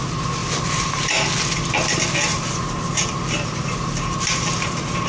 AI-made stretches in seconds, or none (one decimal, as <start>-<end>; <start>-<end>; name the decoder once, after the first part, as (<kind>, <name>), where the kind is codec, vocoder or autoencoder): 0.4-1.0 (vocoder, BigVGAN v2); 2.3-5.1